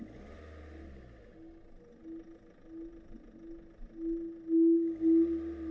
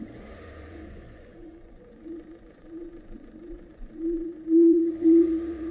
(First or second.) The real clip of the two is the first